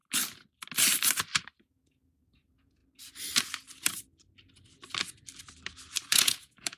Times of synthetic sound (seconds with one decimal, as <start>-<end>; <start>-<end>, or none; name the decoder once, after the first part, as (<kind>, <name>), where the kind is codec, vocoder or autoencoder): 1.6-2.8 (vocoder, Vocos); 6.1-6.8